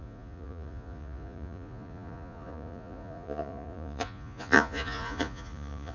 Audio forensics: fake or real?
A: fake